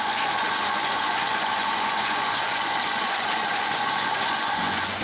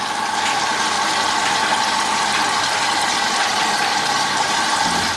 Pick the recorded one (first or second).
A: second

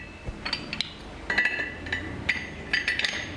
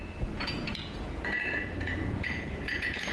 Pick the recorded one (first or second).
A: first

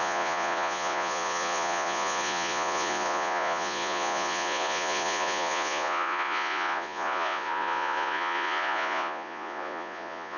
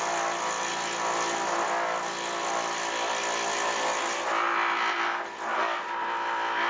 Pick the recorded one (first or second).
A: second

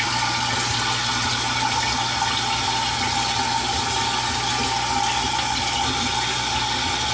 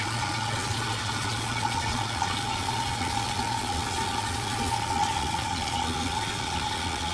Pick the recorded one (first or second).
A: first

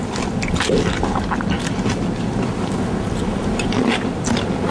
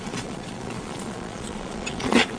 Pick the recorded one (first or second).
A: first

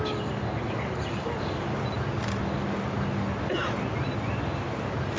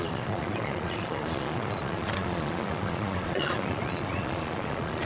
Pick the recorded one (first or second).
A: first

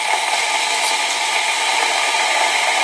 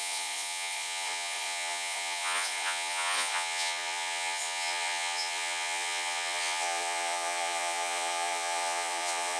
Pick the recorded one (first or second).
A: first